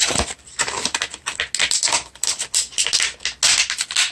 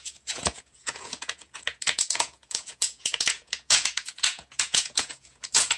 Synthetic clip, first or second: second